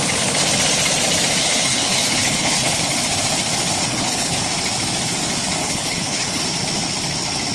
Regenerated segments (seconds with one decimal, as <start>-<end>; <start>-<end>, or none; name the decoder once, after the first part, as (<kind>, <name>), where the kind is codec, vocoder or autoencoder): 1.4-2.8 (codec, HILCodec); 3.8-4.4; 5.6-6.4